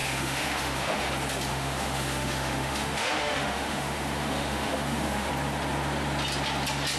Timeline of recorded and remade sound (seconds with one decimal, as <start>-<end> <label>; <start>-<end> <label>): 0.0-1.1 remade; 1.1-1.5 recorded; 1.5-5.3 remade; 5.3-7.0 recorded